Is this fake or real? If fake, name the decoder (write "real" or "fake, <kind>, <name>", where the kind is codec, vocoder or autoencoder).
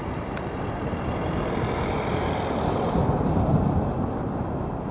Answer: real